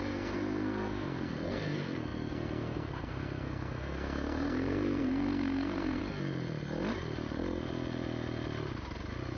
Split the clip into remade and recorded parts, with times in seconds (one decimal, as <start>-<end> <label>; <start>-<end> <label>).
0.0-6.0 remade; 6.0-9.4 recorded